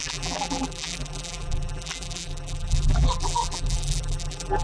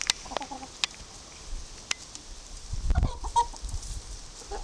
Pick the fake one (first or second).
first